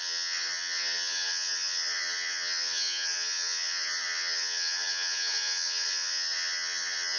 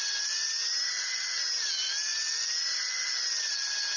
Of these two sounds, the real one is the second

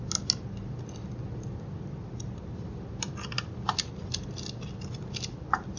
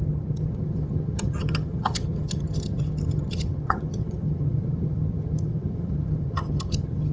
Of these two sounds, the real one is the first